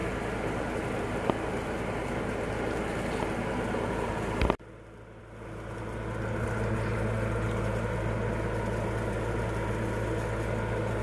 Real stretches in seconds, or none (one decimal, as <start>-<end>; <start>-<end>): 0.0-11.0